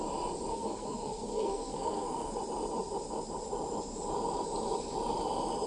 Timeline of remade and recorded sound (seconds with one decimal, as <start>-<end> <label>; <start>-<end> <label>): 0.0-0.5 recorded; 0.5-2.3 remade; 2.3-5.7 recorded